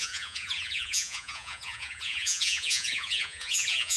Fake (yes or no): yes